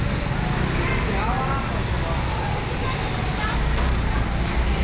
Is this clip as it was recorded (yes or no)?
yes